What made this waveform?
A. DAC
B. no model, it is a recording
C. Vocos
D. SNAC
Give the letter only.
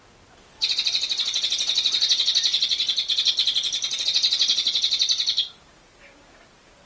B